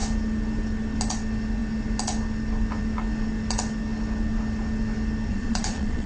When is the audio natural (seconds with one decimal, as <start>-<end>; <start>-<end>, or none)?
0.0-5.3